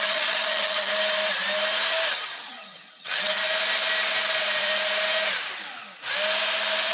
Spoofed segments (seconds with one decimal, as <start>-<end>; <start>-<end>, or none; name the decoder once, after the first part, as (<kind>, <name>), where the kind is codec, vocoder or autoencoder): 0.0-0.9 (vocoder, HiFi-GAN); 2.1-3.4